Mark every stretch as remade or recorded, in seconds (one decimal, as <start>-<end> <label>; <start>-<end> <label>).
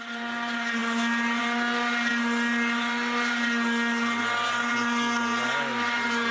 0.0-6.3 recorded